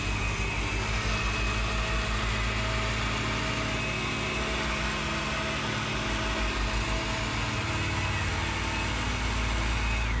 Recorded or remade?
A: recorded